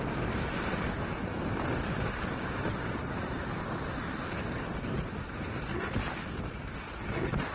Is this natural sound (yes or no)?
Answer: yes